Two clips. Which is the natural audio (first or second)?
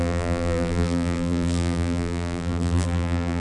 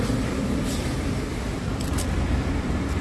second